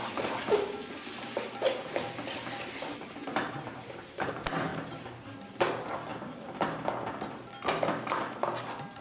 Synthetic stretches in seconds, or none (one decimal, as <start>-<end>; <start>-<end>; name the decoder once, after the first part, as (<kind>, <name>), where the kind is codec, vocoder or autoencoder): 3.3-4.3 (vocoder, BigVGAN v2); 4.7-5.5